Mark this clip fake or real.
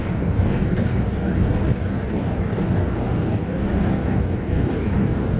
fake